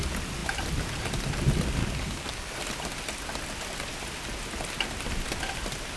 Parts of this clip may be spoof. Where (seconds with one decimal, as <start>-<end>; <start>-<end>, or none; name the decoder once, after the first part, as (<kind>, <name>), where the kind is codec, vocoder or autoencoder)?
1.8-2.5 (codec, DAC)